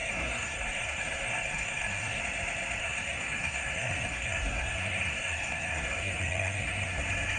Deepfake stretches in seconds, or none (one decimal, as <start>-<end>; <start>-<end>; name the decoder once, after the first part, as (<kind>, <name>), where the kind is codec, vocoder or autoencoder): 0.0-2.2 (codec, SNAC); 2.8-7.0